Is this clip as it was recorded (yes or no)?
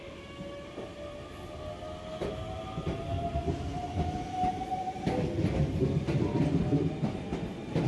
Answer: yes